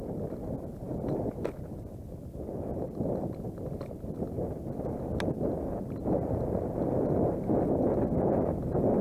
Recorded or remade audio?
recorded